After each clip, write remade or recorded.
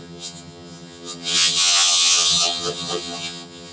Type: remade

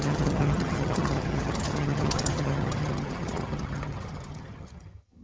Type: remade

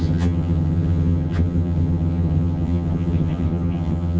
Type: remade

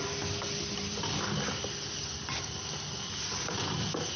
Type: recorded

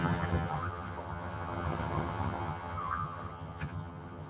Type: remade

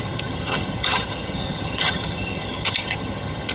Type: remade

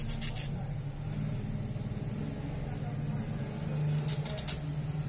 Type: recorded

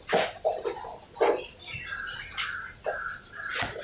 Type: recorded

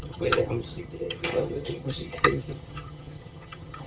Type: remade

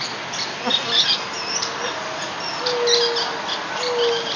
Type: recorded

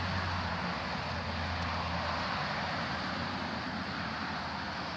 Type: recorded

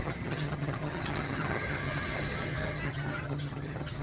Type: remade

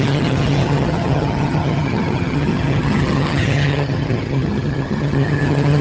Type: remade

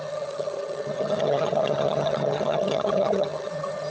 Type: remade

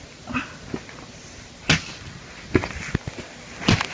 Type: recorded